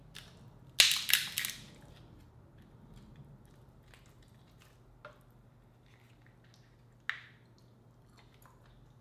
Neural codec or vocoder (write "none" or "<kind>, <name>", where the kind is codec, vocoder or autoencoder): none